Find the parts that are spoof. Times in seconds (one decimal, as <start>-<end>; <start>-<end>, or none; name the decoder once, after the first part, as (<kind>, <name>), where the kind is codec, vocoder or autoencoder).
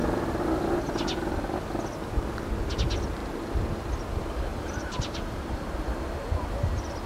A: 4.5-5.6 (vocoder, BigVGAN v2)